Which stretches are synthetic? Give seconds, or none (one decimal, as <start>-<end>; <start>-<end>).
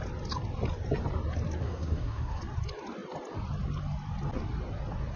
1.6-2.4